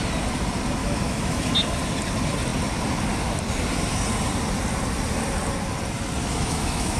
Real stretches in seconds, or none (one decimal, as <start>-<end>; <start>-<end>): 0.0-0.8; 1.5-6.2